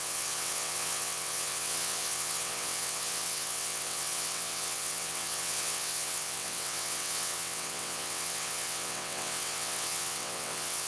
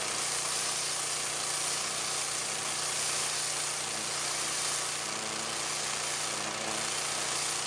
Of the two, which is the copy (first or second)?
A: first